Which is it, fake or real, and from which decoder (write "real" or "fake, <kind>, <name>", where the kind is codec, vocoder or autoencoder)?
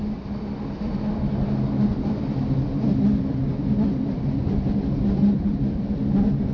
real